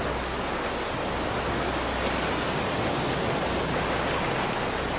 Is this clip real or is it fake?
real